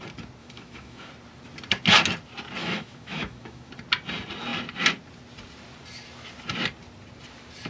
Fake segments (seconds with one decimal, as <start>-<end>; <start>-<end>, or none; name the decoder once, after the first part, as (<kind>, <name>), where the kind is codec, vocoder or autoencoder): 0.4-1.1 (autoencoder, DAC-VAE); 2.6-3.7